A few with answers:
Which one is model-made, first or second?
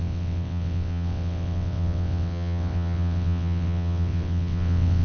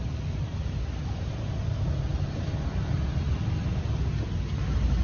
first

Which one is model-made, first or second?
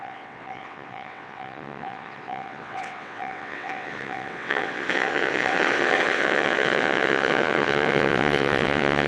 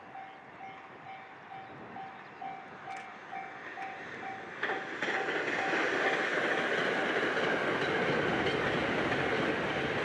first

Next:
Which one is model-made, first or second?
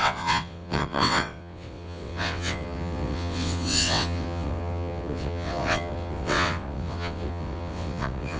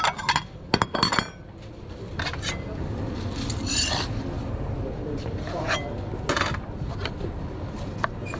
first